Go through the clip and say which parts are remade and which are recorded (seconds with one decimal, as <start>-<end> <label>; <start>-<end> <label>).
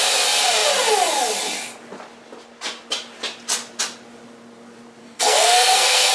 0.0-5.0 recorded; 5.0-6.1 remade